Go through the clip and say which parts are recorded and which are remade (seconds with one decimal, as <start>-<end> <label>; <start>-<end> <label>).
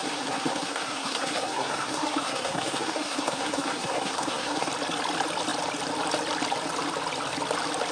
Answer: 0.0-4.7 remade; 4.7-7.9 recorded